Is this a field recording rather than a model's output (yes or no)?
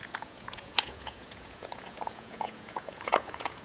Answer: no